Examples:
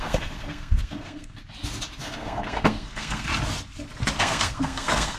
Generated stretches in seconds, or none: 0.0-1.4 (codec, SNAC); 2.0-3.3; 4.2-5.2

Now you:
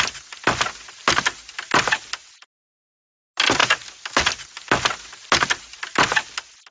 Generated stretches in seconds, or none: none

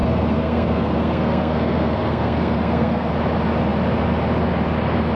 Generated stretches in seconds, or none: 0.0-3.1 (codec, SNAC)